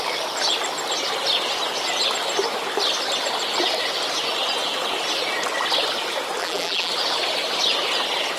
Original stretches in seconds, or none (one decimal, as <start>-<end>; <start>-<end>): 0.0-6.4; 6.9-8.4